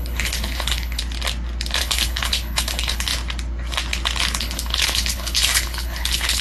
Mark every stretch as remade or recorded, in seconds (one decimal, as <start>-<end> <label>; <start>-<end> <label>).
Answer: 0.0-1.0 remade; 1.0-1.8 recorded; 1.8-3.1 remade; 3.1-4.4 recorded; 4.4-6.4 remade